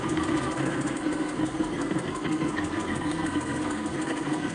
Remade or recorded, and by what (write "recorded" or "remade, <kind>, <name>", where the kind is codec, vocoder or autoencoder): remade, codec, SNAC